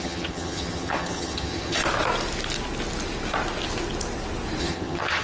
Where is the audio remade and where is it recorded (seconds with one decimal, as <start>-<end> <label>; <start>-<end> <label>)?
0.0-1.8 remade; 1.8-4.6 recorded; 4.6-5.2 remade